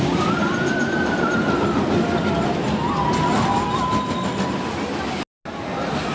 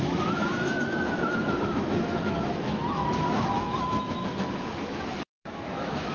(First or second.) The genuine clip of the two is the first